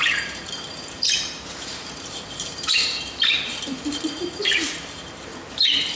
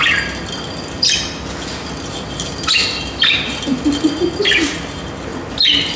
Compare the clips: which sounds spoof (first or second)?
first